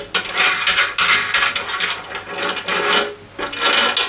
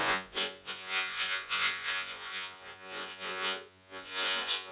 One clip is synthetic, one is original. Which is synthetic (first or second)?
second